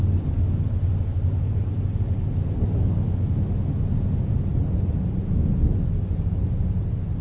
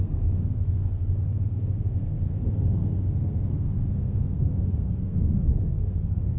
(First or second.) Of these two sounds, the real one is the first